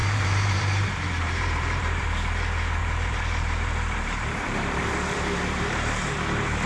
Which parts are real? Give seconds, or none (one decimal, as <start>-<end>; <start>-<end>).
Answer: 2.1-2.8; 6.2-6.7